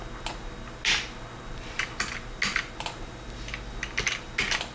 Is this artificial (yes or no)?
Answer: no